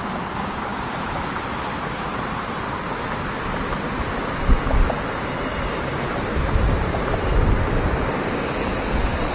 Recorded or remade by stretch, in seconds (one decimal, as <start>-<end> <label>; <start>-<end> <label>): 0.0-0.7 recorded; 0.7-3.0 remade; 3.0-5.1 recorded; 5.1-7.3 remade; 7.3-9.3 recorded